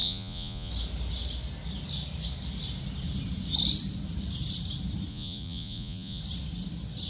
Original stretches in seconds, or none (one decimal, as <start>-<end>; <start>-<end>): 0.7-5.1; 6.2-7.1